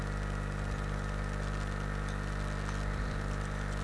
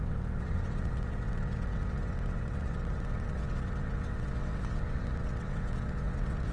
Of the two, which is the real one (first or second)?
first